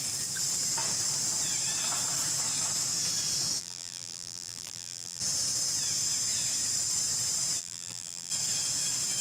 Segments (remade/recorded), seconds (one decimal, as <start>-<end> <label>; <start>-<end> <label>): 0.0-3.6 recorded; 3.6-5.2 remade; 5.2-7.6 recorded; 7.6-8.3 remade; 8.3-9.2 recorded

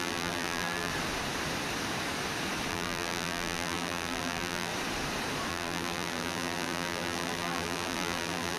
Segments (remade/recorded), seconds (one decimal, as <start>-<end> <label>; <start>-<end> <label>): 0.0-0.9 remade; 0.9-2.7 recorded; 2.7-4.7 remade; 4.7-5.5 recorded; 5.5-8.6 remade